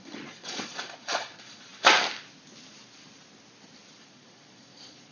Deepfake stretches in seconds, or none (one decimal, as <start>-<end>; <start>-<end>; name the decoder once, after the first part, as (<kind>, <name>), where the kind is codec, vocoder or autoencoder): 0.0-1.7 (vocoder, Vocos); 4.0-5.1